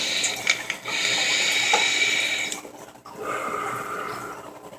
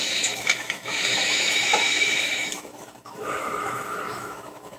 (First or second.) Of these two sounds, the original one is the first